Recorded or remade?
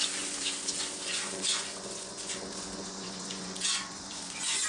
remade